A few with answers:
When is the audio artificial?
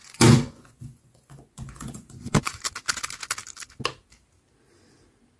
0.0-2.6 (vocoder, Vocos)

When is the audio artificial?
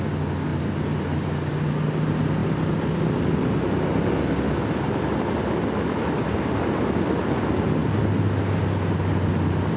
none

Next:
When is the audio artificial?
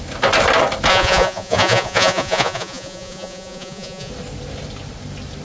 0.9-4.1 (vocoder, Vocos)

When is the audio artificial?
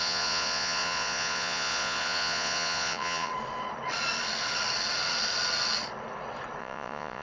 0.0-3.3 (vocoder, Vocos); 6.6-7.2